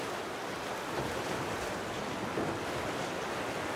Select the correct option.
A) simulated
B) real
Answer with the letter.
B